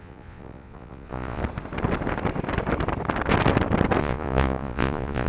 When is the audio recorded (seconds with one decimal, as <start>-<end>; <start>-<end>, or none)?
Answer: 1.4-4.0